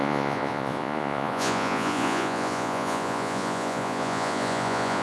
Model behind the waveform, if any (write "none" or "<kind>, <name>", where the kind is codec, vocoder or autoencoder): vocoder, Vocos